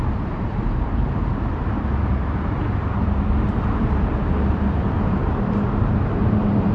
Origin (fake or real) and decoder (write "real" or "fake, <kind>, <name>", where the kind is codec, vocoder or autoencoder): fake, vocoder, BigVGAN v2